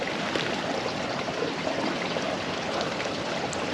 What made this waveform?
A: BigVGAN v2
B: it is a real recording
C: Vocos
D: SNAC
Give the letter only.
B